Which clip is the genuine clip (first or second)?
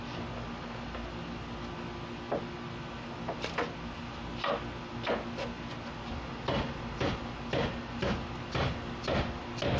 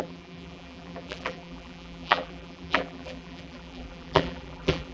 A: first